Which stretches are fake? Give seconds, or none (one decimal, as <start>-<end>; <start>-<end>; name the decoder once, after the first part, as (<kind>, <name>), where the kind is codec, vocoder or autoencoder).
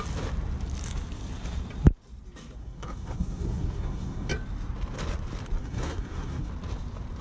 2.6-4.3 (codec, SNAC); 5.6-6.5